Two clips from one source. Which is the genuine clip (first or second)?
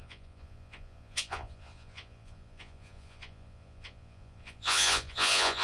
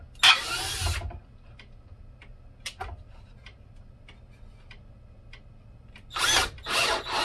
second